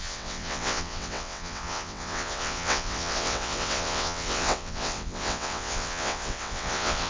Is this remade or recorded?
remade